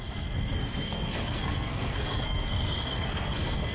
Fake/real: fake